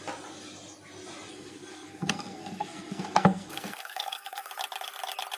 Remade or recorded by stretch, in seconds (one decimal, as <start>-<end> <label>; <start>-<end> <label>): 0.0-1.3 recorded; 1.3-4.5 remade; 4.5-5.4 recorded